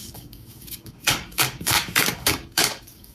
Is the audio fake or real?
fake